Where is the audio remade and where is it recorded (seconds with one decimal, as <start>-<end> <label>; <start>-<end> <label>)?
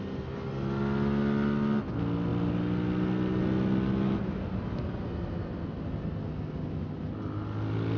0.0-8.0 recorded